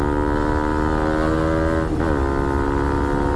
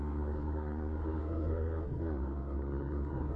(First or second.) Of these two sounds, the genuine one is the first